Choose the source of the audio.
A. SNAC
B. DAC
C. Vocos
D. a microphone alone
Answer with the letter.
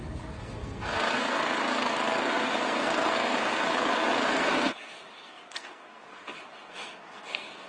A